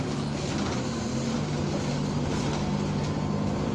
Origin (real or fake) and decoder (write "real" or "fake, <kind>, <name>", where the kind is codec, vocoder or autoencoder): real